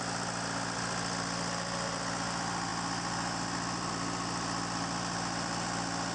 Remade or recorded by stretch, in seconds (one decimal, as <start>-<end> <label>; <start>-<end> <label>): 0.0-6.1 recorded